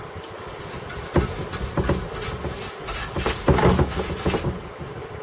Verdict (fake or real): real